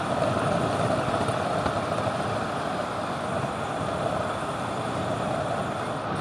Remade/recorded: recorded